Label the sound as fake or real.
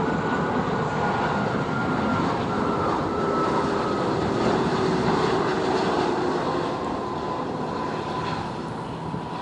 real